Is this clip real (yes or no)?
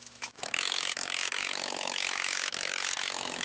no